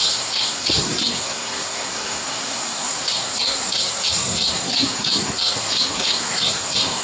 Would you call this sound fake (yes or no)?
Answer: yes